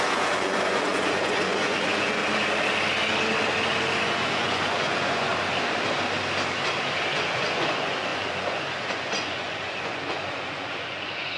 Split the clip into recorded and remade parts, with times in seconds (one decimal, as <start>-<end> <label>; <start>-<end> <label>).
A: 0.0-2.2 remade; 2.2-4.0 recorded; 4.0-5.3 remade; 5.3-7.1 recorded; 7.1-11.4 remade